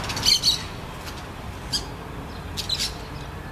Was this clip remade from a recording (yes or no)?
no